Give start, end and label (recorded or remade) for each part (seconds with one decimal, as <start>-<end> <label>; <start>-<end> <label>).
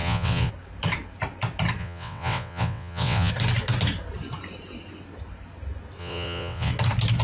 0.0-0.5 remade; 0.5-1.8 recorded; 1.8-3.3 remade; 3.3-6.0 recorded; 6.0-6.7 remade; 6.7-7.2 recorded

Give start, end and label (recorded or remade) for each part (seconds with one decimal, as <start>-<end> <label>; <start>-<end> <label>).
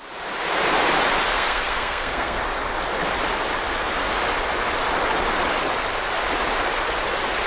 0.0-1.3 recorded; 1.3-2.4 remade; 2.4-7.5 recorded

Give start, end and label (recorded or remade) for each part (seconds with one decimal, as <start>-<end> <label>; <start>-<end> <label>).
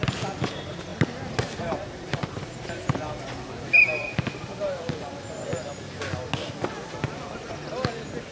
0.0-0.9 recorded; 0.9-2.2 remade; 2.2-4.0 recorded; 4.0-5.1 remade; 5.1-8.3 recorded